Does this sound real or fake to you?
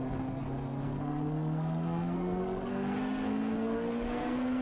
fake